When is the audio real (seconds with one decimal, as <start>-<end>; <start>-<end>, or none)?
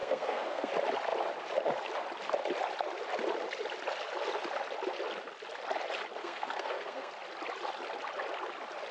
0.7-6.2; 7.1-8.9